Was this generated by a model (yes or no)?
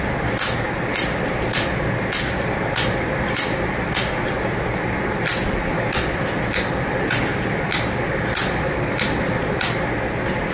no